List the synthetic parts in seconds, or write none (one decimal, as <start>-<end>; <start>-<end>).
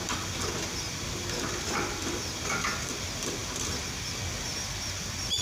none